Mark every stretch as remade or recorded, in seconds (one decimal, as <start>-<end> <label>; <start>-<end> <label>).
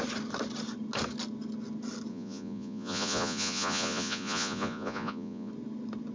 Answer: 0.0-2.1 recorded; 2.1-5.5 remade; 5.5-6.1 recorded